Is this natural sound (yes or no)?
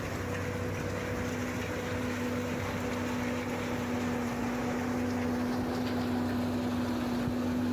yes